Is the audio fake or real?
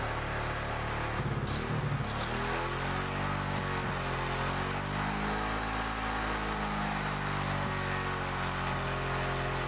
real